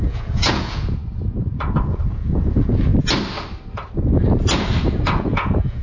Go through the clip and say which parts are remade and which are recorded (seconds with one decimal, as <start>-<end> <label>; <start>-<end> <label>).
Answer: 0.0-1.0 remade; 1.0-1.8 recorded; 1.8-2.9 remade; 2.9-4.9 recorded; 4.9-5.8 remade